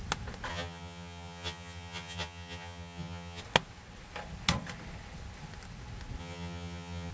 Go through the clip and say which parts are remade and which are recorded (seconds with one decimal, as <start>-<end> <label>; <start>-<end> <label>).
0.0-0.5 recorded; 0.5-3.4 remade; 3.4-6.2 recorded; 6.2-7.1 remade